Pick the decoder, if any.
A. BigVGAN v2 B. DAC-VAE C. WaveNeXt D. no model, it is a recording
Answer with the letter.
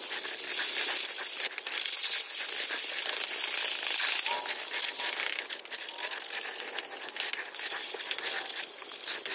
D